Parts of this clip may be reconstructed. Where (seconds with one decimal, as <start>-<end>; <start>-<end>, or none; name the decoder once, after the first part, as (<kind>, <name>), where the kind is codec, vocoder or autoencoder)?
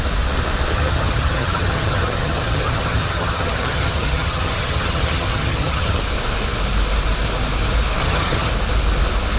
0.7-6.0 (vocoder, HiFi-GAN); 8.0-8.5